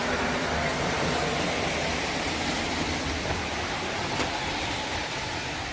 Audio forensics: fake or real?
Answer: real